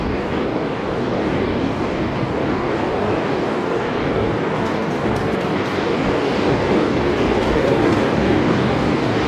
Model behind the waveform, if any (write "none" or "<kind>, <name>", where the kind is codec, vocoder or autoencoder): codec, DAC